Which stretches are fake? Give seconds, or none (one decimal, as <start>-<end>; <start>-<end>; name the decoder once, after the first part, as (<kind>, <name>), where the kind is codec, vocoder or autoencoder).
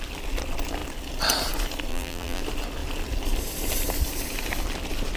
1.9-2.4 (vocoder, BigVGAN v2)